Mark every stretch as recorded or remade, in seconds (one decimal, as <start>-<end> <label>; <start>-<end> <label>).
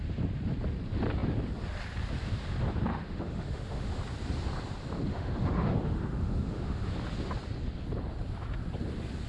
0.0-2.9 recorded; 2.9-4.0 remade; 4.0-5.1 recorded; 5.1-6.9 remade; 6.9-9.3 recorded